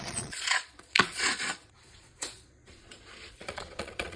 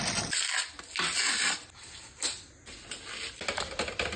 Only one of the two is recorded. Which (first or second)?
second